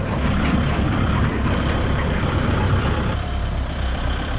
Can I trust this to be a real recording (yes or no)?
no